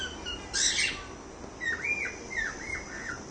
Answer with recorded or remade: recorded